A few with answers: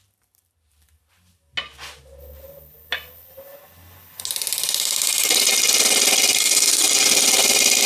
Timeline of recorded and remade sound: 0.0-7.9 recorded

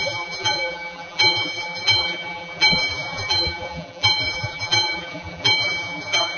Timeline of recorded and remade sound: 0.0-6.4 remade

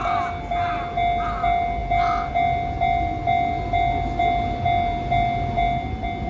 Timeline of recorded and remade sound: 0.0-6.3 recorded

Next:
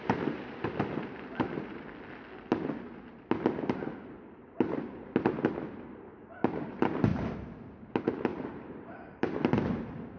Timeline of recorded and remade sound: 0.0-8.3 recorded; 8.3-9.2 remade; 9.2-10.2 recorded

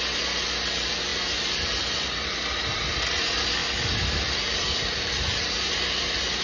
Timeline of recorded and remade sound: 0.0-6.4 recorded

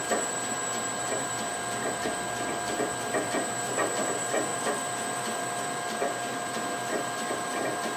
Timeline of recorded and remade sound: 0.0-8.0 remade

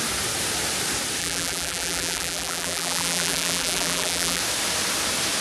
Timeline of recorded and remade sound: 0.0-1.2 recorded; 1.2-4.4 remade; 4.4-5.4 recorded